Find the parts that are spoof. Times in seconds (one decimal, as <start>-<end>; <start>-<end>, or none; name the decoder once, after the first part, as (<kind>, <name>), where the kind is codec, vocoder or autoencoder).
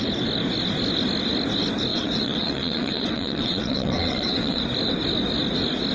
1.9-4.6 (vocoder, WaveNeXt)